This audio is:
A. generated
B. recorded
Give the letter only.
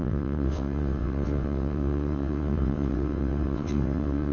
A